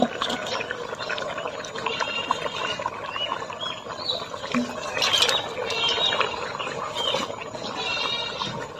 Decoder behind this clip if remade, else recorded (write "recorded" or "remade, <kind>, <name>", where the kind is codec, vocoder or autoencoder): recorded